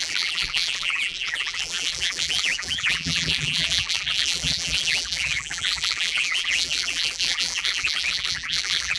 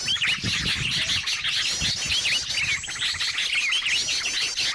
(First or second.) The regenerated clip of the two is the first